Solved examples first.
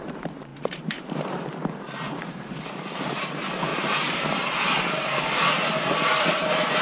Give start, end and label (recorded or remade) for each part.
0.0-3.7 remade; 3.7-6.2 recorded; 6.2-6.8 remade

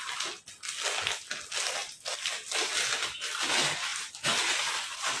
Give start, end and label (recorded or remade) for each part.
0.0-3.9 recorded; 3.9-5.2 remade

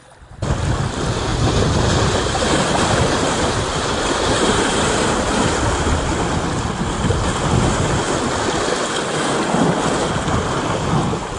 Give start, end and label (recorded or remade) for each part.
0.0-1.3 recorded; 1.3-5.6 remade; 5.6-11.4 recorded

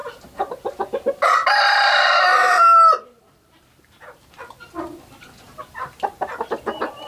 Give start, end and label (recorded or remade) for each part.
0.0-0.5 remade; 0.5-2.4 recorded; 2.4-4.5 remade; 4.5-5.8 recorded; 5.8-6.5 remade; 6.5-7.1 recorded

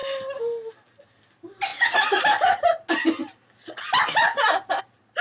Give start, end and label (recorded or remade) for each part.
0.0-0.7 remade; 0.7-5.2 recorded

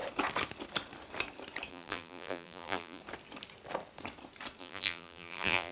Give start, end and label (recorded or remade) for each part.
0.0-1.7 recorded; 1.7-3.0 remade; 3.0-4.6 recorded; 4.6-5.7 remade

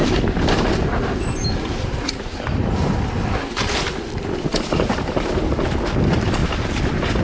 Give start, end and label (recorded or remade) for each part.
0.0-2.9 remade; 2.9-4.5 recorded; 4.5-5.5 remade; 5.5-6.4 recorded; 6.4-7.2 remade

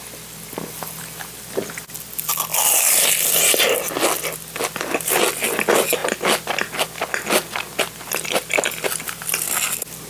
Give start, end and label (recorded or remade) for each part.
0.0-2.5 recorded; 2.5-3.8 remade; 3.8-10.1 recorded